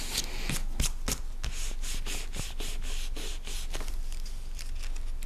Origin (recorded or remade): recorded